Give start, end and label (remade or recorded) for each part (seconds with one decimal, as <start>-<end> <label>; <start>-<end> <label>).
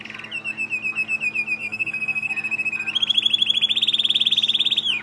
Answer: 0.0-1.6 recorded; 1.6-2.3 remade; 2.3-5.0 recorded